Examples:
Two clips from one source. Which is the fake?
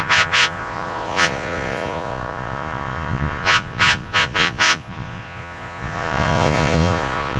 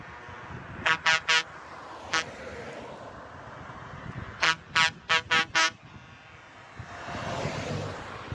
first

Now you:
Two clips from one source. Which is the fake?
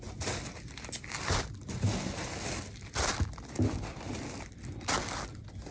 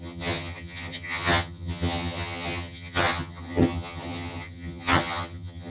second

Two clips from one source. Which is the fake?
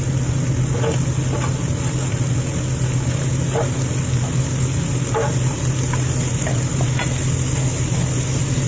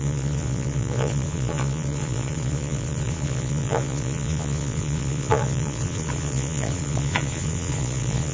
second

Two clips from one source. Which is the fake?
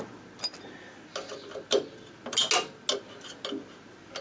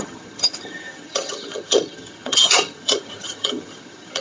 second